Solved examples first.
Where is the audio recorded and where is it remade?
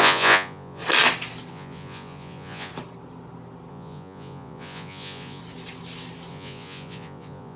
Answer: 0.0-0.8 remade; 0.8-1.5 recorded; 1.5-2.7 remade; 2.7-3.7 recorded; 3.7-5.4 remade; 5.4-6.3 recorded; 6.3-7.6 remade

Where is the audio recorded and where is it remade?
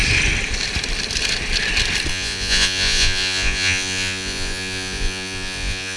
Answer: 0.0-2.1 recorded; 2.1-6.0 remade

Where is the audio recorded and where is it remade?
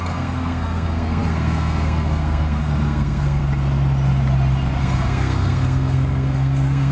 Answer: 0.0-3.4 remade; 3.4-4.8 recorded; 4.8-6.9 remade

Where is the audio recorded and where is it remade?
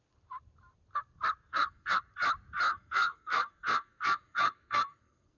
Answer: 0.0-1.5 recorded; 1.5-2.0 remade; 2.0-2.7 recorded; 2.7-5.4 remade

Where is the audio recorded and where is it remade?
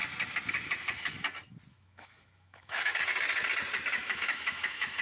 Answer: 0.0-1.7 recorded; 1.7-3.0 remade; 3.0-4.0 recorded; 4.0-5.0 remade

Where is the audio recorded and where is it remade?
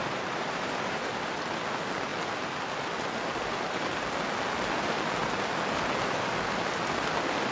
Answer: 0.0-1.1 remade; 1.1-7.5 recorded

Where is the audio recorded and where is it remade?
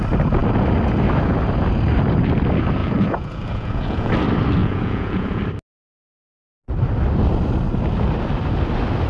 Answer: 0.0-2.8 recorded; 2.8-4.1 remade; 4.1-4.6 recorded; 4.6-5.4 remade; 5.4-9.1 recorded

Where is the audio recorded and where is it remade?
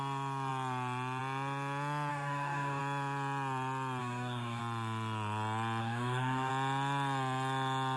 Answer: 0.0-2.1 recorded; 2.1-2.8 remade; 2.8-4.0 recorded; 4.0-4.6 remade; 4.6-5.8 recorded; 5.8-6.5 remade; 6.5-8.0 recorded